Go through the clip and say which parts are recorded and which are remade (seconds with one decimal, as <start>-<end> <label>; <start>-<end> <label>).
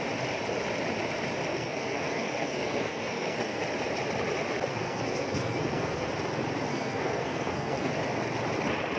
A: 0.0-1.5 recorded; 1.5-3.6 remade; 3.6-4.7 recorded; 4.7-6.1 remade; 6.1-6.7 recorded; 6.7-7.9 remade; 7.9-9.0 recorded